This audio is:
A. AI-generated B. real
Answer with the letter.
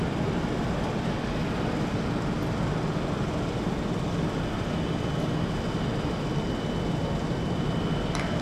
B